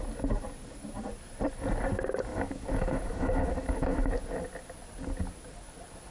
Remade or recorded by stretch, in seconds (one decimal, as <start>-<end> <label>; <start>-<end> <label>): 0.0-2.3 recorded; 2.3-4.1 remade; 4.1-6.1 recorded